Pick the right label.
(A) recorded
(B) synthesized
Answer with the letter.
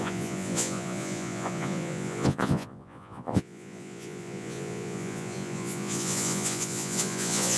B